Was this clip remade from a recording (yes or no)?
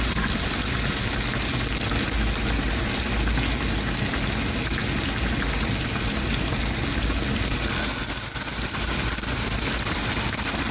no